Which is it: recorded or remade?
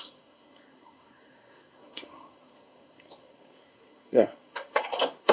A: remade